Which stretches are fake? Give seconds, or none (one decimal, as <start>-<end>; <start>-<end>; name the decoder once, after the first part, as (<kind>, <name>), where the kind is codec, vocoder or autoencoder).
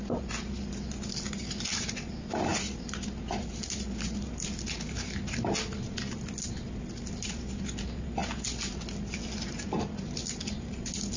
none